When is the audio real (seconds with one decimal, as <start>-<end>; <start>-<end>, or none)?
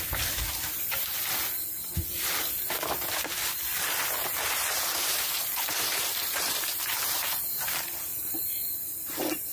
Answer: 0.0-3.7; 7.4-8.1; 8.6-9.5